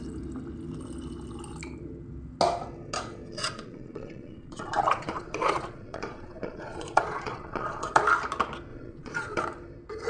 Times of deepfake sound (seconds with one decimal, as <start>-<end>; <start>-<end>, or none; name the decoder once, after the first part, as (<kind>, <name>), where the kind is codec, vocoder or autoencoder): 3.3-8.0 (vocoder, Vocos); 8.7-9.4